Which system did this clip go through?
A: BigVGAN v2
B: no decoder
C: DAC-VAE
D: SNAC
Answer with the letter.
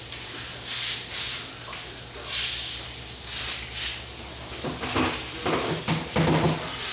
B